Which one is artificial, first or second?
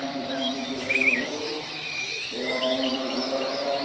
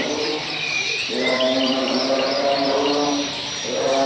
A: first